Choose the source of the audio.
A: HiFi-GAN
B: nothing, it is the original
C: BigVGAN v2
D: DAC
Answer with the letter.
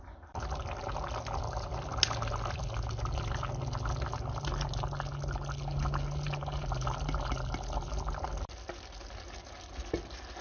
B